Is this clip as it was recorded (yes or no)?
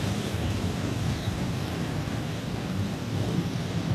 no